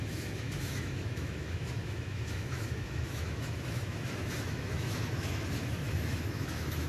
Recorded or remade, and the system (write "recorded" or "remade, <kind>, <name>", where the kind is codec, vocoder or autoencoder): remade, autoencoder, DAC-VAE